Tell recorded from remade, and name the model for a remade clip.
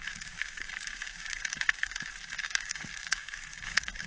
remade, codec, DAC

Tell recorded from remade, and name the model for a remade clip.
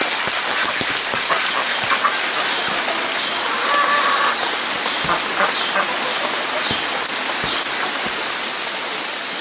recorded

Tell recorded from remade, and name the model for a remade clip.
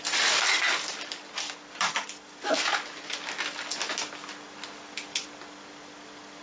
recorded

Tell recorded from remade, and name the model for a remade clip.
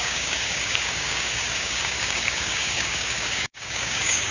remade, codec, DAC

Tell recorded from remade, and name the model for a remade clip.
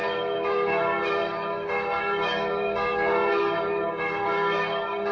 remade, codec, DAC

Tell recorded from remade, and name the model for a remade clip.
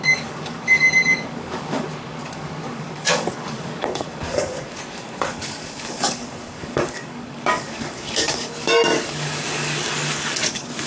remade, codec, DAC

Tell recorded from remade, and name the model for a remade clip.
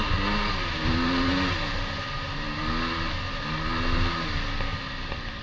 recorded